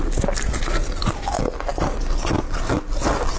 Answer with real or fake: real